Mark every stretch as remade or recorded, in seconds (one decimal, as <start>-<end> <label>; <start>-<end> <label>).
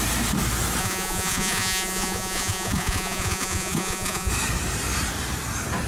0.0-0.8 recorded; 0.8-4.3 remade; 4.3-5.9 recorded